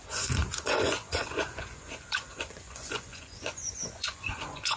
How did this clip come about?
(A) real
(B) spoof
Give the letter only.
B